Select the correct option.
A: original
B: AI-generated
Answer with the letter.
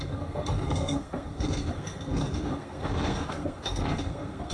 B